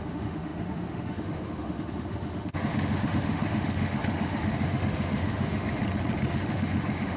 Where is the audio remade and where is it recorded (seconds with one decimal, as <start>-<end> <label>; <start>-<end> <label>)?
0.0-5.8 remade; 5.8-6.3 recorded; 6.3-7.2 remade